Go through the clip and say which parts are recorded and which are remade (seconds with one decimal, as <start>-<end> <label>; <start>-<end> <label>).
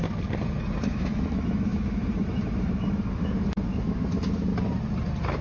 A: 0.0-0.8 recorded; 0.8-4.5 remade; 4.5-5.4 recorded